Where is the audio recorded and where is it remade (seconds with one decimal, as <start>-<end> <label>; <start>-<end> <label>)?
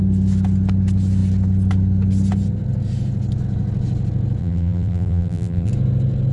0.0-4.4 recorded; 4.4-5.7 remade; 5.7-6.3 recorded